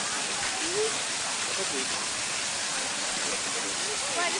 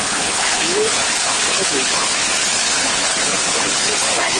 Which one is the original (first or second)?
first